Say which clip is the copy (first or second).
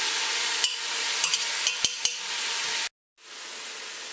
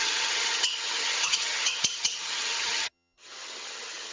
second